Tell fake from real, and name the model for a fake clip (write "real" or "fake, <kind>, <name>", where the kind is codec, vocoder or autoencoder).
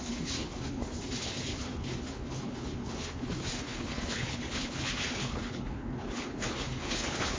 fake, codec, HILCodec